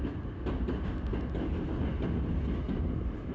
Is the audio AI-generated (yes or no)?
no